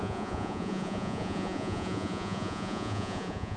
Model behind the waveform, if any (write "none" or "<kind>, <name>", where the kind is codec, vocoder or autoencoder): vocoder, Vocos